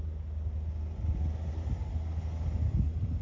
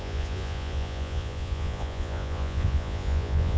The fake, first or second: second